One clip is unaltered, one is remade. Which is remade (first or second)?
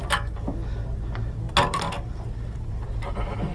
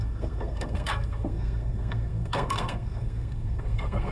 second